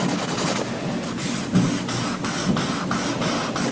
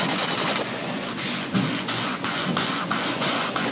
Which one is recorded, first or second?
first